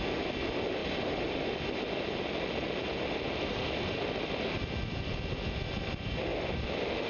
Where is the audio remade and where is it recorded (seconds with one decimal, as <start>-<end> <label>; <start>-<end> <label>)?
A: 0.0-0.8 recorded; 0.8-3.2 remade; 3.2-6.3 recorded; 6.3-7.1 remade